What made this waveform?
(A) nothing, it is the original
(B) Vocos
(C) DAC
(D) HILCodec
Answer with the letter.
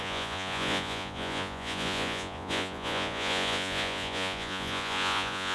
B